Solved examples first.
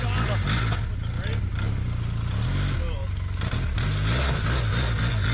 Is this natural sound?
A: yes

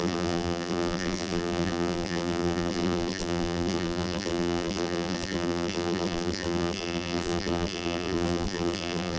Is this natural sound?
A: no